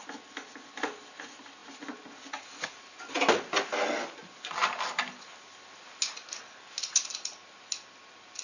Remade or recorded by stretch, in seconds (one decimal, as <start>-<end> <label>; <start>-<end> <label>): 0.0-8.4 recorded